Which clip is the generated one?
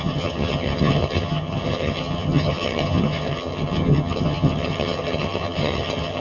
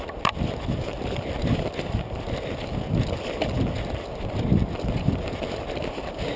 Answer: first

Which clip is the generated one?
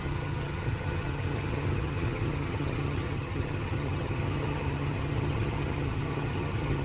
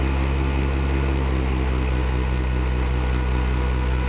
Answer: first